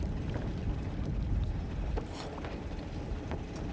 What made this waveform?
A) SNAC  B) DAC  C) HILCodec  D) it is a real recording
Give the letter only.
D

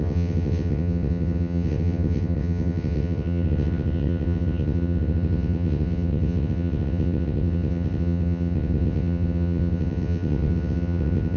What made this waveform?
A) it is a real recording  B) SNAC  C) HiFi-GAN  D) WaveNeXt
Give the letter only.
D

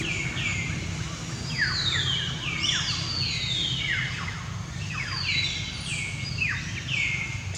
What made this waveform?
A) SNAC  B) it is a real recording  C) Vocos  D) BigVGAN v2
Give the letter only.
B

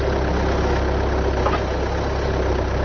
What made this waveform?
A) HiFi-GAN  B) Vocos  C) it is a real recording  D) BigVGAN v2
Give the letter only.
C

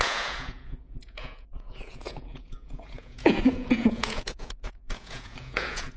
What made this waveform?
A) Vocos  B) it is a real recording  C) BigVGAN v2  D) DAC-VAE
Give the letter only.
A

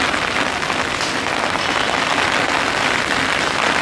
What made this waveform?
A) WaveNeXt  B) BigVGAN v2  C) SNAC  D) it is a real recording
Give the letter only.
D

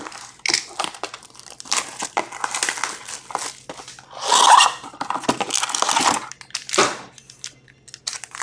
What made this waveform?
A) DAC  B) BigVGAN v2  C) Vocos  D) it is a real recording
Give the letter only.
D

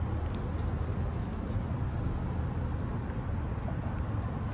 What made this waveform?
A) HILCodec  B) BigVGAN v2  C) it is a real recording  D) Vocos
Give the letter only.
C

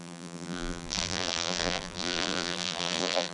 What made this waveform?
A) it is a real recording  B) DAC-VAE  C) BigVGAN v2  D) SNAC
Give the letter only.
C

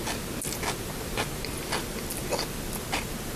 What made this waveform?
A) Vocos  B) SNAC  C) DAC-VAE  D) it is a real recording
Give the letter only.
D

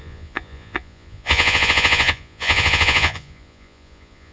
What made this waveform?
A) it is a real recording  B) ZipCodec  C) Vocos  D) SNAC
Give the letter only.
C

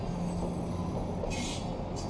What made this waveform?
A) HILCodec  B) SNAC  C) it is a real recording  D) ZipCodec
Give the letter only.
C